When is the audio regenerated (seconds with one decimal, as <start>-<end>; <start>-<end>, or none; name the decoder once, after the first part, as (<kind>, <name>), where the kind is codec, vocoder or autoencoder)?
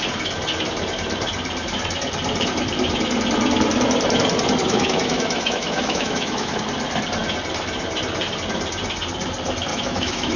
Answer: 4.6-6.6 (autoencoder, DAC-VAE); 9.7-10.4